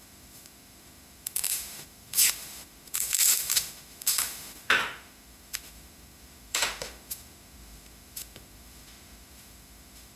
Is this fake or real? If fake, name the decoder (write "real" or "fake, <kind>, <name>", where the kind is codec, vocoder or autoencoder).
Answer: fake, autoencoder, DAC-VAE